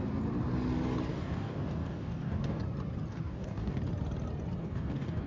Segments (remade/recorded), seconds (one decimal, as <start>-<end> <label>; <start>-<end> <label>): 0.0-1.1 recorded; 1.1-2.6 remade; 2.6-3.1 recorded; 3.1-3.8 remade; 3.8-4.6 recorded; 4.6-5.3 remade

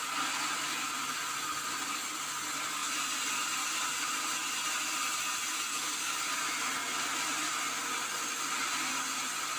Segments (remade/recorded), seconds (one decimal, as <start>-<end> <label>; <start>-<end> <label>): 0.0-5.7 recorded; 5.7-6.2 remade; 6.2-9.6 recorded

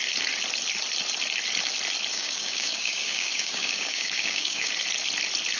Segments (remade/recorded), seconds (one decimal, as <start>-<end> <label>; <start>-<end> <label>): 0.0-2.1 recorded; 2.1-4.7 remade; 4.7-5.6 recorded

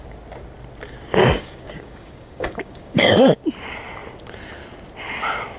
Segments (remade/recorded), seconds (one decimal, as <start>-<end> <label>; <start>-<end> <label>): 0.0-1.2 recorded; 1.2-3.4 remade; 3.4-5.6 recorded

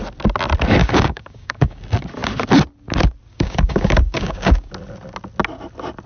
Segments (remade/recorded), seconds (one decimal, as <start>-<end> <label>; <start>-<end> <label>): 0.0-0.8 recorded; 0.8-1.8 remade; 1.8-3.3 recorded; 3.3-4.7 remade; 4.7-6.1 recorded

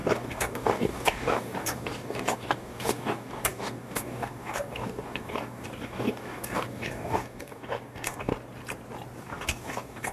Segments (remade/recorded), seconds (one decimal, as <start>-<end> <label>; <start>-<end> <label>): 0.0-8.3 remade; 8.3-9.2 recorded; 9.2-10.1 remade

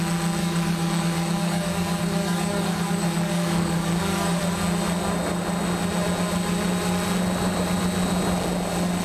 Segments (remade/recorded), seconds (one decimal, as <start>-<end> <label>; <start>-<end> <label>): 0.0-0.4 recorded; 0.4-4.4 remade; 4.4-9.0 recorded

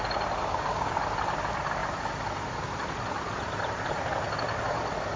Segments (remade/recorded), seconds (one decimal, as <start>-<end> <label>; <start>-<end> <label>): 0.0-0.4 recorded; 0.4-0.9 remade; 0.9-5.2 recorded